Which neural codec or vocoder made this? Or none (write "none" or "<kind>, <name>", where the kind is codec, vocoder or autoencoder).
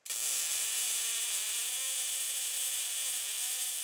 none